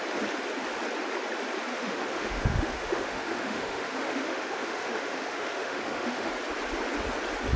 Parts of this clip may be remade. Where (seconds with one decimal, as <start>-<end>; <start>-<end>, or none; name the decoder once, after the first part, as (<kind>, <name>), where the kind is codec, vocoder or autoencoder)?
1.7-6.3 (autoencoder, DAC-VAE)